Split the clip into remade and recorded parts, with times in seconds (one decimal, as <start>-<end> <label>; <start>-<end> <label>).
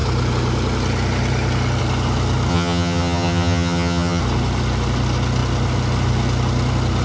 0.0-2.5 recorded; 2.5-4.2 remade; 4.2-7.0 recorded